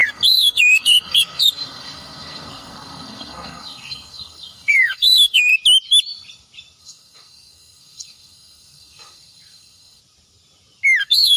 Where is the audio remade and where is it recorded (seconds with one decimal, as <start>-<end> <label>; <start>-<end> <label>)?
0.0-5.5 remade; 5.5-6.8 recorded; 6.8-10.0 remade; 10.0-11.0 recorded; 11.0-11.4 remade